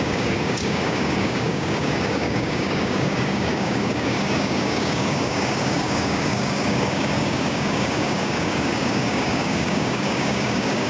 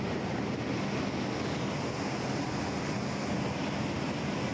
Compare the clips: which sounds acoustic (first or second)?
second